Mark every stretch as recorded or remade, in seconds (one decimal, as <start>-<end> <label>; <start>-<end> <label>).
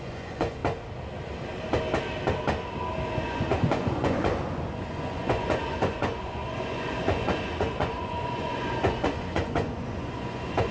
0.0-0.6 remade; 0.6-3.1 recorded; 3.1-10.7 remade